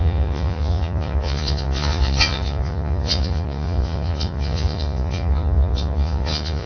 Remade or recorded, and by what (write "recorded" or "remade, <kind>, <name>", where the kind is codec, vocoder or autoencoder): remade, vocoder, Vocos